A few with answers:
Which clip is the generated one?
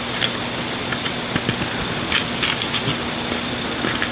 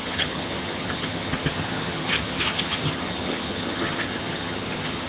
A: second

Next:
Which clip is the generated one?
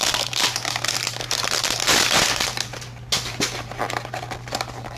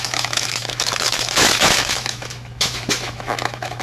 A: second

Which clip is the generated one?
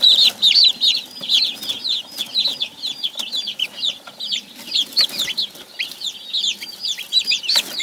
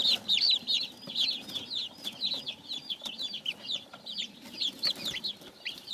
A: second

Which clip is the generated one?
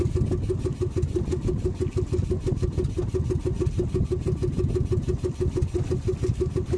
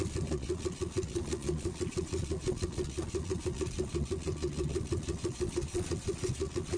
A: second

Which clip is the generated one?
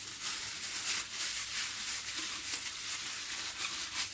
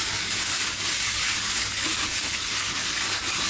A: second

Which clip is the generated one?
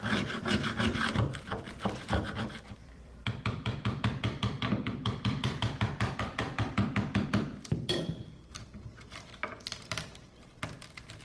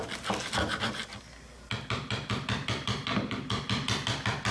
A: first